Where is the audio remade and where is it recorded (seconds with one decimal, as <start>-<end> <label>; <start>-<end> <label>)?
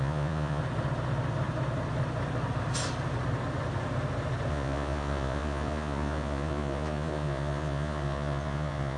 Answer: 0.0-0.6 remade; 0.6-4.5 recorded; 4.5-9.0 remade